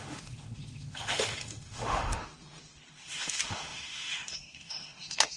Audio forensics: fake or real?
fake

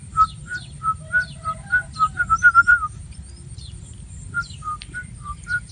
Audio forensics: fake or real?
fake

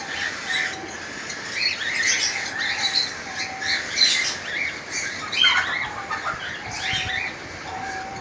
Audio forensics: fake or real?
real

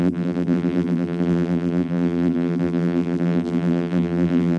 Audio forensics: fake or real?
fake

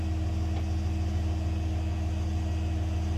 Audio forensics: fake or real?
real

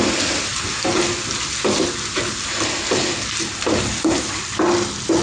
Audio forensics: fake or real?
real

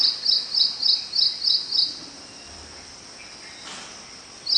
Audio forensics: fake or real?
real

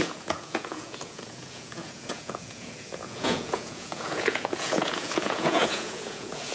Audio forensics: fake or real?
fake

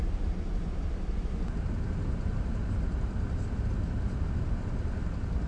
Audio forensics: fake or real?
real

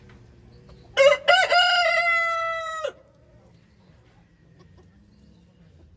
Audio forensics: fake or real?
real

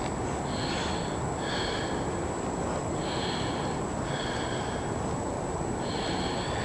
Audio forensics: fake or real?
real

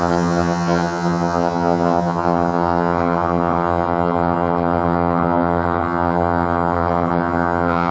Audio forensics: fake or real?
fake